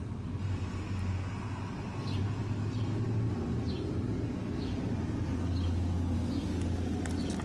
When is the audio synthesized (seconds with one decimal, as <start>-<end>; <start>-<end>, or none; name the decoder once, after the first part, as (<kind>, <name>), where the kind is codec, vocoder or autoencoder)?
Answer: none